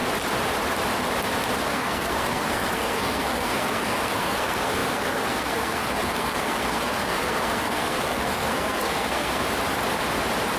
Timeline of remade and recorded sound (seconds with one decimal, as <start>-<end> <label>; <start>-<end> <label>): 0.0-1.7 recorded; 1.7-9.4 remade; 9.4-10.6 recorded